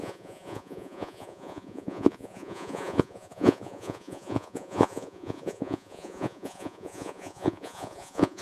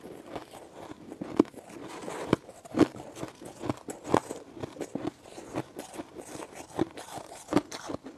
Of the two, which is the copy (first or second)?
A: first